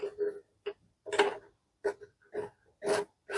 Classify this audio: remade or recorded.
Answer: recorded